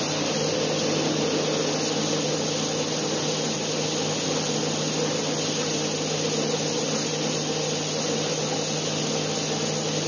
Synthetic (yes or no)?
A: no